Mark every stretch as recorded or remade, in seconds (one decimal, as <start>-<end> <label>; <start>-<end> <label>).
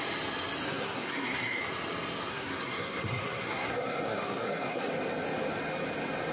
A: 0.0-0.6 recorded; 0.6-1.6 remade; 1.6-2.3 recorded; 2.3-4.9 remade; 4.9-6.3 recorded